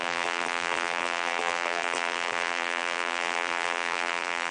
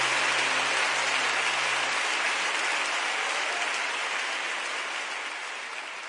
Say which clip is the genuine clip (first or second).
second